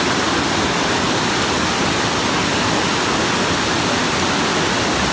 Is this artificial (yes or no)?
no